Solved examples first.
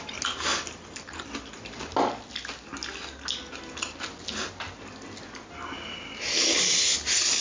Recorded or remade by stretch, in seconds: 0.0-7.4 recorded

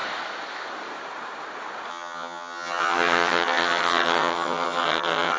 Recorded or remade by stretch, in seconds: 0.0-1.9 recorded; 1.9-5.4 remade